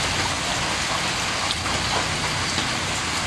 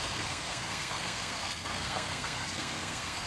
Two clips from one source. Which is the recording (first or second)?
first